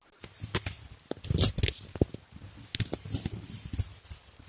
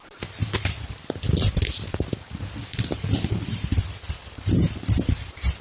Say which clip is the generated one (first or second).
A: second